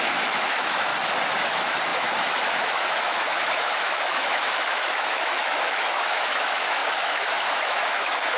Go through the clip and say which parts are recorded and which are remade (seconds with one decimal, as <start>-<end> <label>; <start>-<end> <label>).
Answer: 0.0-0.9 remade; 0.9-1.4 recorded; 1.4-8.4 remade